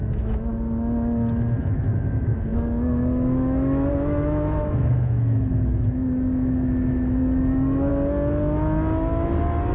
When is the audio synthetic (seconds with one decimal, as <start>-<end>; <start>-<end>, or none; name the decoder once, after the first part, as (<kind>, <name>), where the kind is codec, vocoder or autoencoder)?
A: 0.0-0.5 (autoencoder, DAC-VAE); 1.6-7.9